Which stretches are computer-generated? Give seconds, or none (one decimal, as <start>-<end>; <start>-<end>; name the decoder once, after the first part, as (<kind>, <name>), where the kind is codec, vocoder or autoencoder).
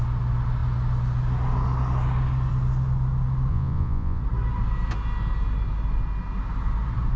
3.5-4.2 (vocoder, Vocos)